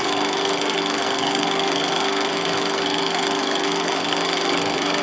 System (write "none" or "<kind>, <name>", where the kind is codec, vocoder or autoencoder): codec, SNAC